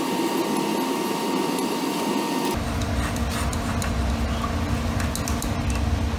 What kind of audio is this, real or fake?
real